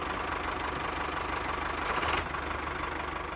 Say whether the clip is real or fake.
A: real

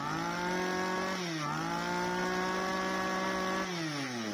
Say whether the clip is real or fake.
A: real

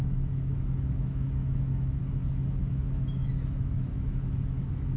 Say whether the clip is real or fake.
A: fake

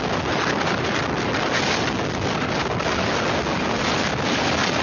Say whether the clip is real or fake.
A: real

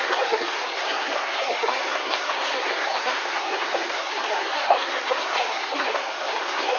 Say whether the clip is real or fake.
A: fake